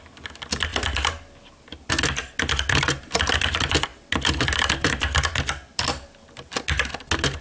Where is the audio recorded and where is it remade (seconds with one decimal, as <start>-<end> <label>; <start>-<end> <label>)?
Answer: 0.0-3.9 recorded; 3.9-5.8 remade; 5.8-7.4 recorded